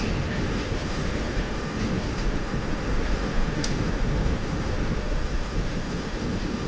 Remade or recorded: remade